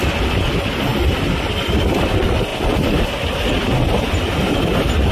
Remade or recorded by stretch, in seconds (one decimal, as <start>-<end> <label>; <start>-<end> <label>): 0.0-5.1 recorded